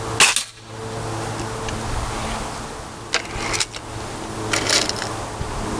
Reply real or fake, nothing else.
real